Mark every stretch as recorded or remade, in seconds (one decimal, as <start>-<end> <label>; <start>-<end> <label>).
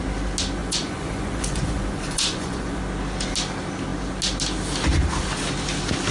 0.0-0.6 recorded; 0.6-2.8 remade; 2.8-6.1 recorded